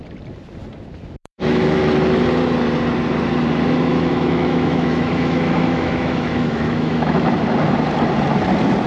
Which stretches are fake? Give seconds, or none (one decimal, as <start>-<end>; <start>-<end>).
1.2-1.8; 3.9-7.3